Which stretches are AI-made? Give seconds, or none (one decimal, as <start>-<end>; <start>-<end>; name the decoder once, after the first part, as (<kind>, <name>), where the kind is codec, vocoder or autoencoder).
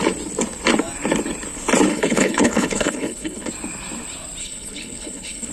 1.9-3.5 (codec, HILCodec); 4.4-5.5